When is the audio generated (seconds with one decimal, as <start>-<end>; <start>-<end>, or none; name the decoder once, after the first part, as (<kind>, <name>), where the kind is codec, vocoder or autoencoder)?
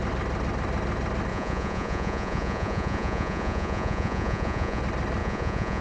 1.3-4.8 (vocoder, Vocos); 5.2-5.8